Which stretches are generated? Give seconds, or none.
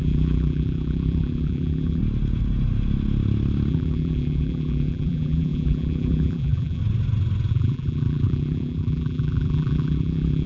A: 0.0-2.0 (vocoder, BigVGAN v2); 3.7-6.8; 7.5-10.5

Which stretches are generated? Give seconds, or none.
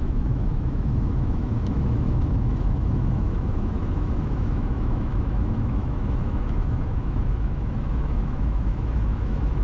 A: 0.0-9.6 (autoencoder, DAC-VAE)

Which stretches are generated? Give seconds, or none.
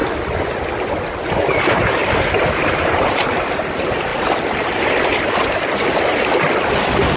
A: 1.5-4.1 (vocoder, BigVGAN v2)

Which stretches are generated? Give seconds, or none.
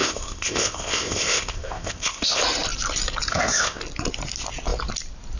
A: 0.0-2.4 (codec, ZipCodec); 3.3-3.8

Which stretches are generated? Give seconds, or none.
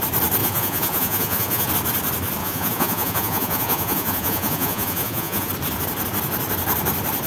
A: 0.4-1.7 (vocoder, Vocos); 2.4-5.5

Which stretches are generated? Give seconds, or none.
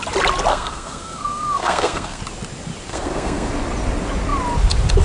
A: 0.5-2.2 (codec, SNAC); 2.9-3.5